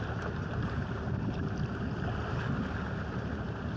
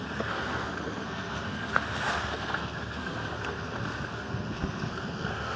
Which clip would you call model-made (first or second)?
second